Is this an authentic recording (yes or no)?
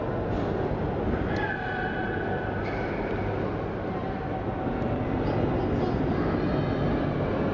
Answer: yes